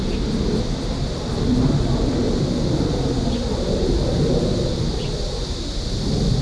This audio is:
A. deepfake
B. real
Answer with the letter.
B